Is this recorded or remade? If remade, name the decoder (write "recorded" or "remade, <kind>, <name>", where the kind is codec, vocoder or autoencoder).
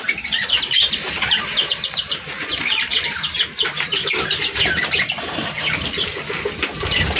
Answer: remade, vocoder, BigVGAN v2